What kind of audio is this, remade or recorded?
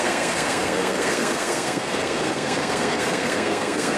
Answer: remade